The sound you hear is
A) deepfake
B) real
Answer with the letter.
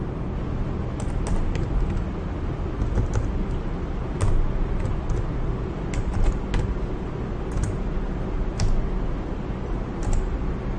B